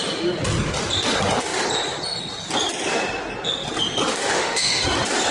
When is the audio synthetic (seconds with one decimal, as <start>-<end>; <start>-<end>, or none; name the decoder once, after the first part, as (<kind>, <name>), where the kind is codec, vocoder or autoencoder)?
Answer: 4.1-4.8 (autoencoder, DAC-VAE)

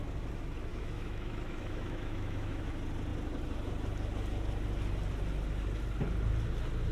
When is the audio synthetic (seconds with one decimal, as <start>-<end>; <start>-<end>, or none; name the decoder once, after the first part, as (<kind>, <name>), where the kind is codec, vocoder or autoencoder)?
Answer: 0.7-2.7 (autoencoder, DAC-VAE)